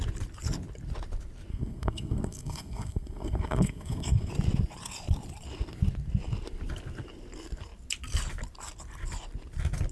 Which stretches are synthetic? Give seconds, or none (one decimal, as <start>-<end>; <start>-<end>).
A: 1.5-4.3

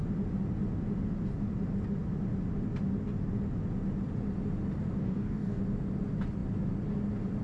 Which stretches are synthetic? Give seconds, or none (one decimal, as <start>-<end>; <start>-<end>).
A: 5.0-5.6

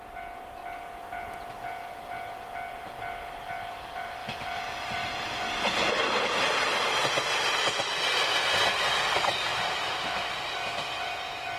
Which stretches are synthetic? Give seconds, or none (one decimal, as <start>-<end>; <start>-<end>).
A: 0.6-2.3

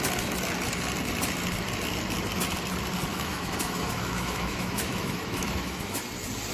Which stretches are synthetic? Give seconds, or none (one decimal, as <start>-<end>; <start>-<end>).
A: 3.1-6.0

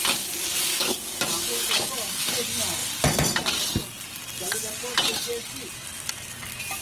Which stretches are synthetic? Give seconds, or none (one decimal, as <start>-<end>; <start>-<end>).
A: 0.7-2.3

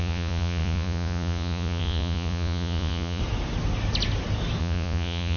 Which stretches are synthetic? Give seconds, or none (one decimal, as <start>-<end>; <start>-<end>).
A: 0.0-3.2; 4.6-5.4

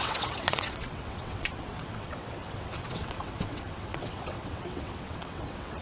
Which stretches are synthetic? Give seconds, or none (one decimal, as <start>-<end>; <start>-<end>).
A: 0.0-5.8

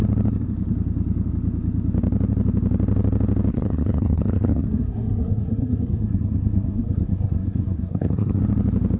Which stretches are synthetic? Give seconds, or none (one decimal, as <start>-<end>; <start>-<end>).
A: 3.5-8.4